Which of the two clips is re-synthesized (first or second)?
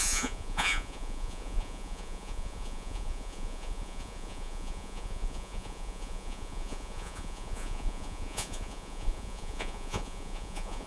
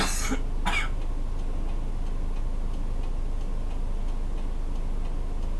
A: first